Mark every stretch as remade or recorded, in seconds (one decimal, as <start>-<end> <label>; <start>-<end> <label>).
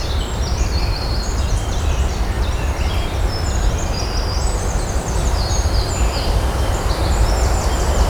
0.0-1.1 recorded; 1.1-6.0 remade; 6.0-8.1 recorded